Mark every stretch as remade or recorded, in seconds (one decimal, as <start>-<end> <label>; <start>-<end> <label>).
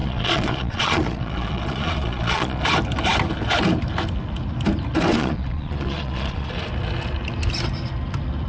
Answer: 0.0-2.6 remade; 2.6-5.1 recorded; 5.1-6.5 remade; 6.5-8.5 recorded